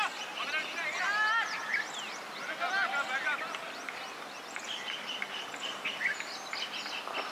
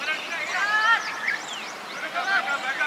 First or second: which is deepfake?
second